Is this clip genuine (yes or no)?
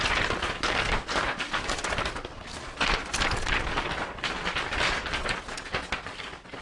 yes